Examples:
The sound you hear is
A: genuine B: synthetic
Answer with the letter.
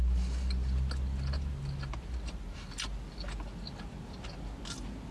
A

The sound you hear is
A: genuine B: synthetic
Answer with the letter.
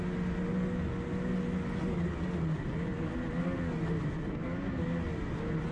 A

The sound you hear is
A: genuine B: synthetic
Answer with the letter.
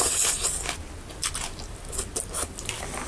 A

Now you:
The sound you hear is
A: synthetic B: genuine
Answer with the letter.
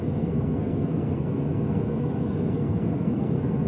A